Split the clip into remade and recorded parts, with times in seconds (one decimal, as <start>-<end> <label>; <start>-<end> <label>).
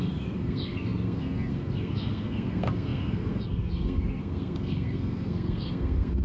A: 0.0-6.2 remade